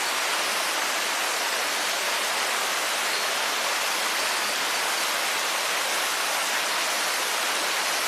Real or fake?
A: real